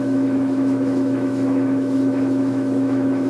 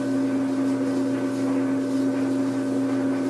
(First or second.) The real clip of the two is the second